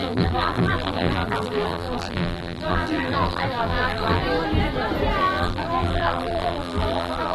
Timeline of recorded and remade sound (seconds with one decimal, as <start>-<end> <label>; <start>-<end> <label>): 0.0-4.2 remade; 4.2-5.2 recorded; 5.2-7.3 remade